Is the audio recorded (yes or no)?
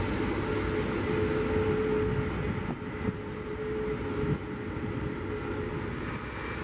yes